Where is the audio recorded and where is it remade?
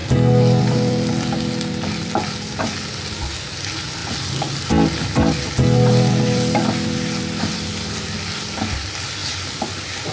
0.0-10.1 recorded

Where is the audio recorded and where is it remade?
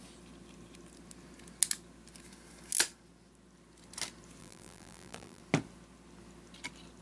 0.0-4.4 recorded; 4.4-5.4 remade; 5.4-7.0 recorded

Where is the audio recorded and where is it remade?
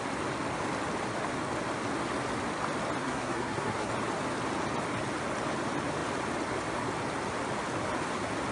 0.0-3.0 recorded; 3.0-3.9 remade; 3.9-8.5 recorded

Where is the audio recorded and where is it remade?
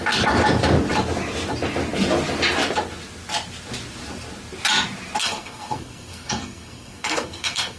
0.0-5.2 recorded; 5.2-7.8 remade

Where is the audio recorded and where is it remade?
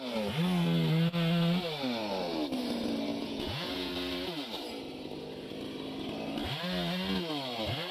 0.0-3.1 recorded; 3.1-3.9 remade; 3.9-7.9 recorded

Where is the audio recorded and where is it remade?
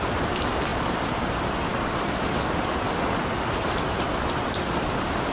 0.0-5.3 recorded